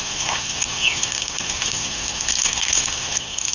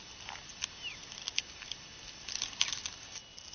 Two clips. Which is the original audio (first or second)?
second